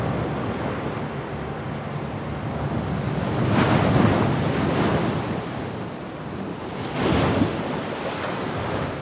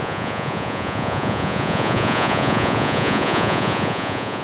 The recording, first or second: first